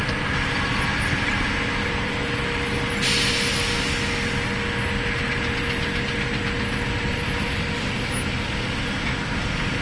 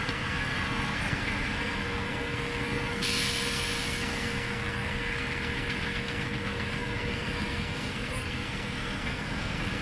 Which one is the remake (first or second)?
second